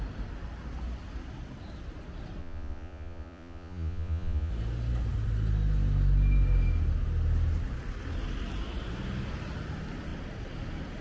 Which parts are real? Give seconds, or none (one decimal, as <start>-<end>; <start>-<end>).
0.0-2.4; 4.5-11.0